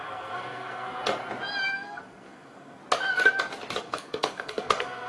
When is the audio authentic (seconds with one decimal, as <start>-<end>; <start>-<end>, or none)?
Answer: 1.0-1.7; 2.8-3.8